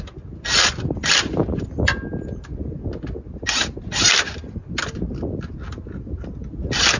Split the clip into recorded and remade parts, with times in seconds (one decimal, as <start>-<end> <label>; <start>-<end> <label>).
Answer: 0.0-7.0 recorded